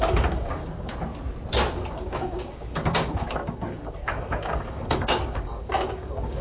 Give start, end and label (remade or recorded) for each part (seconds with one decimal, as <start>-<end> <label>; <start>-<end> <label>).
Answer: 0.0-0.9 remade; 0.9-1.8 recorded; 1.8-6.4 remade